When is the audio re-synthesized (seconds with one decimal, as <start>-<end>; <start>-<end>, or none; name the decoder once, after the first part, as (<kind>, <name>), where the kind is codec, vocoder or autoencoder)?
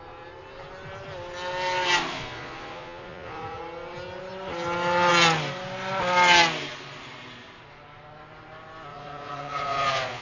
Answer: 2.1-3.6 (vocoder, Vocos); 8.9-10.2